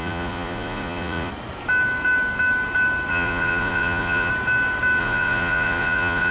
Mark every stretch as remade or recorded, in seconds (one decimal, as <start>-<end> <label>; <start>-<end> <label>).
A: 0.0-1.3 remade; 1.3-3.1 recorded; 3.1-4.3 remade; 4.3-5.0 recorded; 5.0-6.3 remade